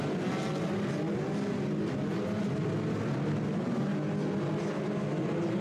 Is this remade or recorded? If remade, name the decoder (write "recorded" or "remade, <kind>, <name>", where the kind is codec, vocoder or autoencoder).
recorded